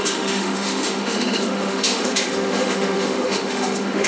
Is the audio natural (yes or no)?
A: no